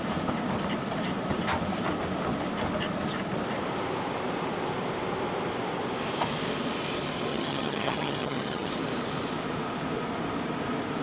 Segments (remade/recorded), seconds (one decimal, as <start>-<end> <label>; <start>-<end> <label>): 0.0-7.3 recorded; 7.3-8.7 remade; 8.7-11.0 recorded